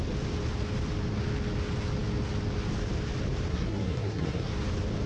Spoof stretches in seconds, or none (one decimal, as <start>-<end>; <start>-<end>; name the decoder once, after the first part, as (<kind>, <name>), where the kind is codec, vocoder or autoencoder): 3.5-4.5 (codec, SNAC)